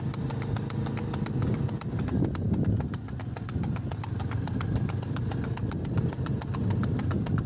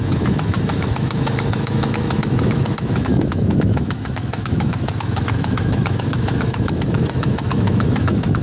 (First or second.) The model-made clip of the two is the second